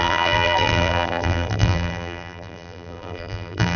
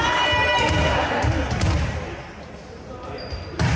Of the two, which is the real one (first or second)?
second